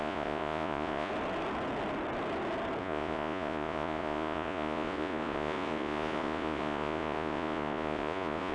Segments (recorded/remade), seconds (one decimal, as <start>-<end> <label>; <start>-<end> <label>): 0.0-1.1 remade; 1.1-2.8 recorded; 2.8-8.5 remade